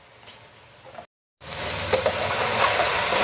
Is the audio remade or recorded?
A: recorded